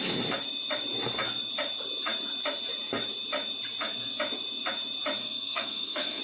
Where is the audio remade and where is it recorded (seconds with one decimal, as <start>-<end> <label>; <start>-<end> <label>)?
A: 0.0-5.2 recorded; 5.2-6.2 remade